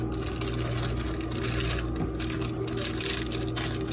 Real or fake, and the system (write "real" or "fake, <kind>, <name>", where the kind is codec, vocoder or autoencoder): real